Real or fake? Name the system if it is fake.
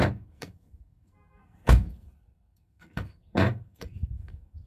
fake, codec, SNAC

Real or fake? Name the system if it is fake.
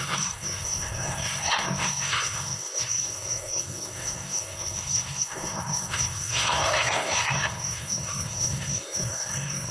fake, codec, SNAC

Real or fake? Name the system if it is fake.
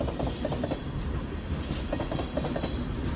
real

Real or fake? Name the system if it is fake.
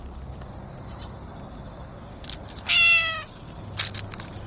real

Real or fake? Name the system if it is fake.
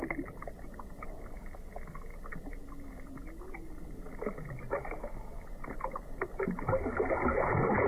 real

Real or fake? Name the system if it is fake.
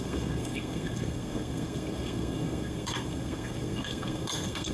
fake, codec, SNAC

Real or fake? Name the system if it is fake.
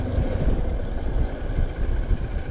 real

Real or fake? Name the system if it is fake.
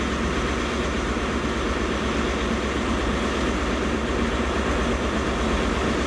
real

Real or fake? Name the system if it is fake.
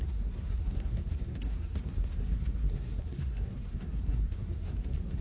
fake, codec, SNAC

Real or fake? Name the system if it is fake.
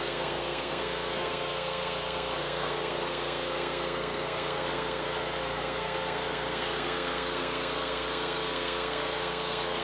fake, codec, SNAC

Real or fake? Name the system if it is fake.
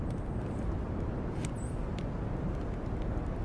real